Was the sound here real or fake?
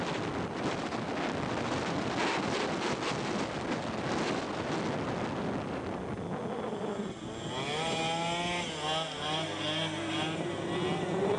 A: real